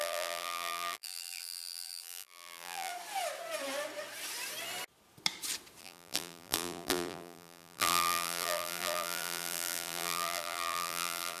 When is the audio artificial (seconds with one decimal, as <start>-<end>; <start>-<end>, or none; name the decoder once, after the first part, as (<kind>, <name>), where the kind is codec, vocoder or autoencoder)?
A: 0.0-2.9 (vocoder, BigVGAN v2); 5.8-11.4